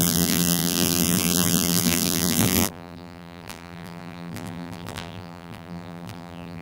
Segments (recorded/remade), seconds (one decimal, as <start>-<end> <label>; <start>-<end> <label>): 0.0-6.6 remade